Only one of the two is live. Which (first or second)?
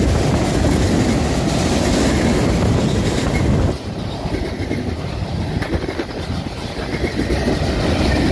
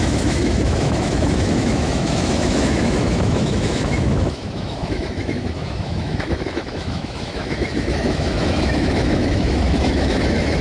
first